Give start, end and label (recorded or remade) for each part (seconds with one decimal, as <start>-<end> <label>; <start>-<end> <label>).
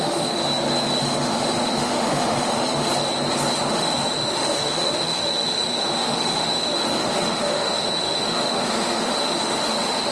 0.0-0.4 remade; 0.4-1.0 recorded; 1.0-2.9 remade; 2.9-3.7 recorded; 3.7-10.1 remade